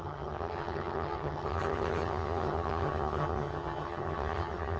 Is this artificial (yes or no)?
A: yes